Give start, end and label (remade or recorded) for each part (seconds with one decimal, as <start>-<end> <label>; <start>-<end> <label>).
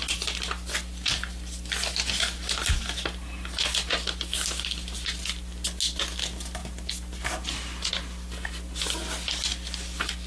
0.0-10.3 recorded